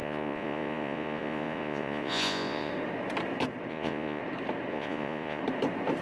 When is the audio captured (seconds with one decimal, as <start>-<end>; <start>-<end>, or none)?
2.7-3.7; 4.2-4.7; 5.4-6.0